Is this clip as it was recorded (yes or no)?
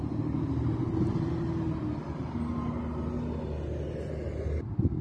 yes